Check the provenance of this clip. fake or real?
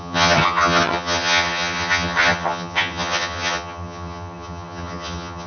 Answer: fake